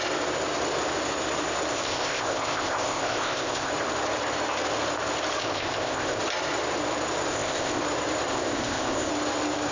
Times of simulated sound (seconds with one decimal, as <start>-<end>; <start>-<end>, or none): 1.7-3.7; 5.4-6.2; 7.3-7.8; 8.3-9.1